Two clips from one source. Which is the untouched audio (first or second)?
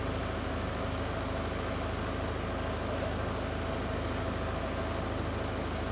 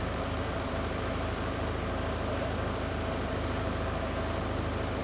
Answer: first